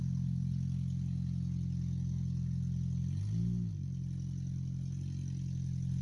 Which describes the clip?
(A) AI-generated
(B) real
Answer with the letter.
B